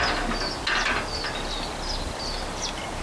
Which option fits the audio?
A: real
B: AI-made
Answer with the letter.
A